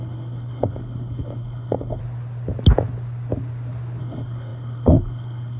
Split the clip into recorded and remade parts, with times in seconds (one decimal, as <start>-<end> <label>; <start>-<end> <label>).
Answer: 0.0-2.0 remade; 2.0-4.0 recorded; 4.0-5.6 remade